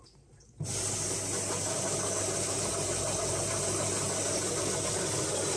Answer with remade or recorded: recorded